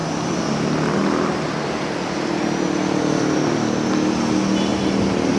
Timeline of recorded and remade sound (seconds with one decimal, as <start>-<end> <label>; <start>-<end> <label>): 0.0-5.4 recorded